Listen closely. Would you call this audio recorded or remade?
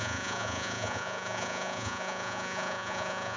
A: remade